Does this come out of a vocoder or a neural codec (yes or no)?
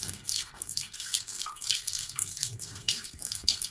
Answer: yes